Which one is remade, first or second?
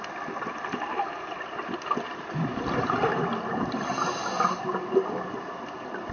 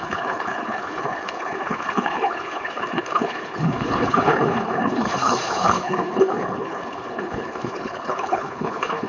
second